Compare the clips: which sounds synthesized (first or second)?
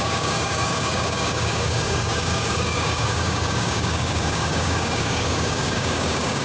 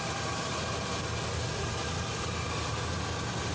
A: first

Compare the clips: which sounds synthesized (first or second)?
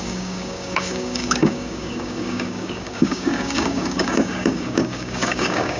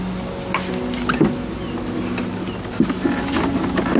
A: first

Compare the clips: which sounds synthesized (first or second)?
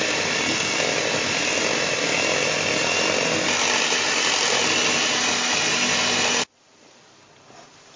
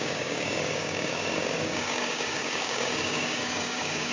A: second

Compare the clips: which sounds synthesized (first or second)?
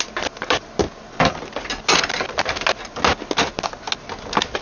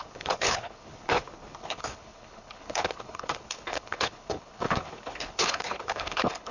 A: second